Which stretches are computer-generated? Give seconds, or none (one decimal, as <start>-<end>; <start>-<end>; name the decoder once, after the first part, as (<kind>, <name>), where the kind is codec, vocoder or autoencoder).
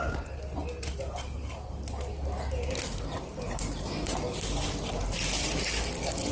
none